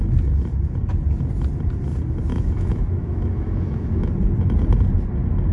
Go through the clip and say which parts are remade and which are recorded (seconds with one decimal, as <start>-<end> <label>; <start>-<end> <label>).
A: 0.0-2.3 recorded; 2.3-4.1 remade; 4.1-5.5 recorded